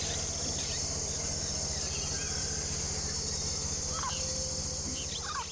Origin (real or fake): real